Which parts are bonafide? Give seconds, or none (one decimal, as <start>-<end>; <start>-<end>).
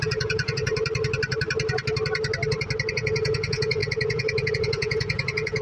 0.7-2.9